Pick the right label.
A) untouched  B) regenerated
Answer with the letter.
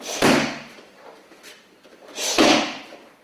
A